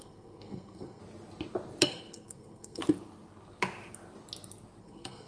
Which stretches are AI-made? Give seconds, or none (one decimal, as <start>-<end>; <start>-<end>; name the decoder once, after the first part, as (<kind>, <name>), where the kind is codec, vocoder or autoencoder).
0.0-1.0 (codec, SNAC); 1.8-2.8; 4.8-5.3